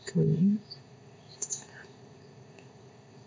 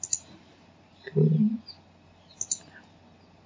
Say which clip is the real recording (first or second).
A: second